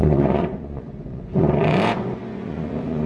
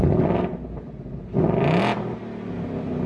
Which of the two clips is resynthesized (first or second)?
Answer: first